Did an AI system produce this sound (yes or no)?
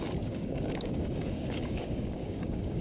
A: yes